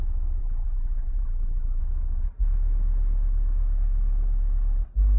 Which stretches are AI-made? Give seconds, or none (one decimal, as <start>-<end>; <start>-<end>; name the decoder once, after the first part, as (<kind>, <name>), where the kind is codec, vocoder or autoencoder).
0.4-1.8 (vocoder, BigVGAN v2)